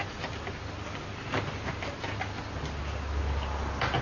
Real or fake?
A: real